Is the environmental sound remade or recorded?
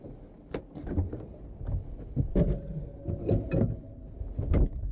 recorded